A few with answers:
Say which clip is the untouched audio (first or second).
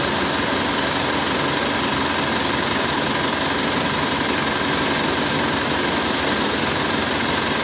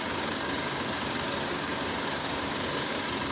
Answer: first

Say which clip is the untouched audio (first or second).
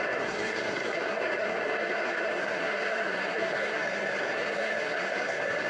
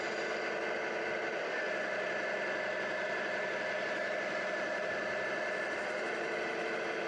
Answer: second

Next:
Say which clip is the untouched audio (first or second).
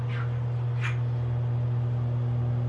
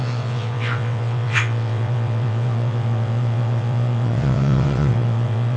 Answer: first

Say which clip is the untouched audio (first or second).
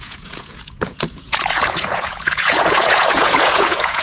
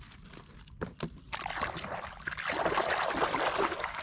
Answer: second